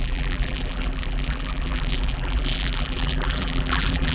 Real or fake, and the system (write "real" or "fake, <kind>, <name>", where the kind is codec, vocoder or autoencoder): fake, vocoder, BigVGAN v2